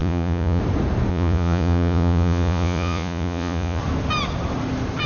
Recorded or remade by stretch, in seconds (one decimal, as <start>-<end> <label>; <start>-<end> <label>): 0.0-0.6 remade; 0.6-1.1 recorded; 1.1-3.8 remade; 3.8-5.1 recorded